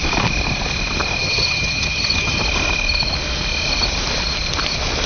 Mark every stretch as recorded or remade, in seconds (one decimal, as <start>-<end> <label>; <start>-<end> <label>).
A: 0.0-1.2 recorded; 1.2-2.4 remade; 2.4-5.1 recorded